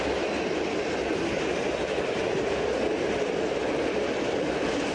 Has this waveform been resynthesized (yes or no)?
no